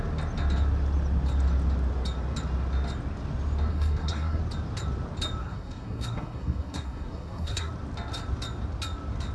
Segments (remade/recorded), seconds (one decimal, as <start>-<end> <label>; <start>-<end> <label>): 0.0-3.7 recorded; 3.7-4.4 remade; 4.4-5.4 recorded; 5.4-7.7 remade; 7.7-9.3 recorded

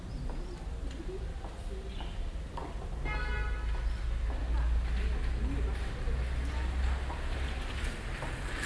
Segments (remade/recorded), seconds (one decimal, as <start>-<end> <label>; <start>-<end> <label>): 0.0-8.7 recorded

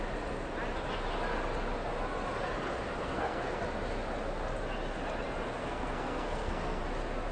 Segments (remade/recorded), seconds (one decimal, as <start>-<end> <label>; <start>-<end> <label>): 0.0-3.0 recorded; 3.0-3.6 remade; 3.6-5.6 recorded; 5.6-6.8 remade; 6.8-7.3 recorded

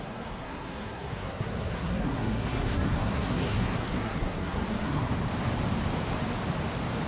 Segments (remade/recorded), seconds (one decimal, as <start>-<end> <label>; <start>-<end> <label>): 0.0-5.1 remade; 5.1-7.1 recorded